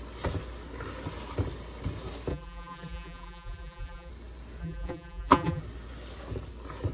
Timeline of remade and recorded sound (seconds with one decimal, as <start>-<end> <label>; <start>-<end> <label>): 0.0-2.3 recorded; 2.3-4.1 remade; 4.1-4.6 recorded; 4.6-5.6 remade; 5.6-6.9 recorded